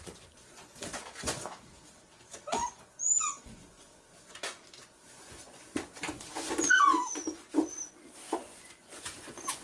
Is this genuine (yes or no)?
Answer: no